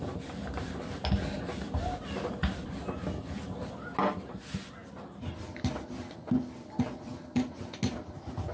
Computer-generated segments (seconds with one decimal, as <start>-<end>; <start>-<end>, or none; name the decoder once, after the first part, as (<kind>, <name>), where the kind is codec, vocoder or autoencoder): 4.8-5.6 (vocoder, BigVGAN v2); 7.1-7.6